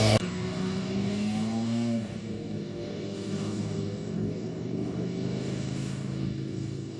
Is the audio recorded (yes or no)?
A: no